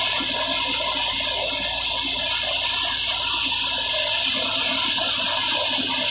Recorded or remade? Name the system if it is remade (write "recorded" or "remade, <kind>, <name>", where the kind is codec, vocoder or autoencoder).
recorded